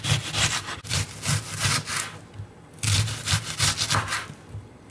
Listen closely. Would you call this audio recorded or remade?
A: recorded